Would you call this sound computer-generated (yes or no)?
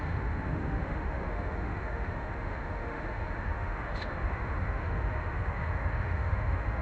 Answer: yes